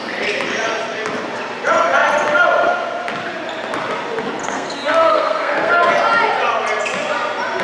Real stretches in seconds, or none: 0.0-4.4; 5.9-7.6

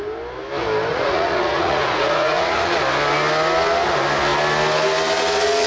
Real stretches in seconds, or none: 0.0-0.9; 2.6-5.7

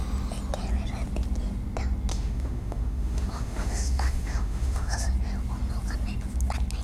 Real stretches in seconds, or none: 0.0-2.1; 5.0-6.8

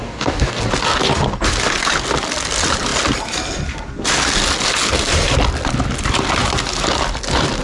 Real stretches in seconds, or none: 0.6-7.6